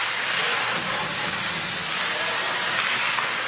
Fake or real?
real